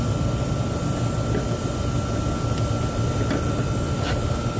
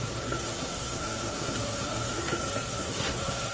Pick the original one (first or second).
first